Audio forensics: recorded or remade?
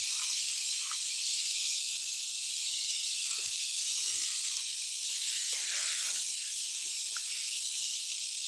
remade